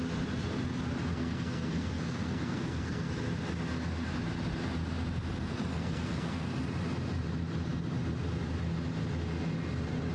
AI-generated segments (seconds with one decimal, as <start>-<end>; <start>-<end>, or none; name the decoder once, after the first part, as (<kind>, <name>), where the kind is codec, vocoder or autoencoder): 1.1-3.1 (codec, SNAC); 5.7-6.6